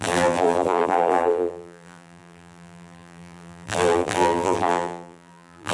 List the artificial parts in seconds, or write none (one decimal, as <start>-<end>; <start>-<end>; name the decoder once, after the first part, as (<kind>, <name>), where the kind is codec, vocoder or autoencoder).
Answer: 0.0-5.7 (vocoder, BigVGAN v2)